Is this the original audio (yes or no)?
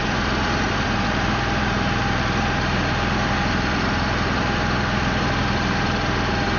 no